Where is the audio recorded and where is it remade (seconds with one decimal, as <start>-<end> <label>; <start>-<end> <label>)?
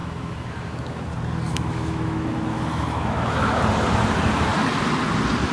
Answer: 0.0-1.1 remade; 1.1-1.5 recorded; 1.5-3.6 remade; 3.6-5.5 recorded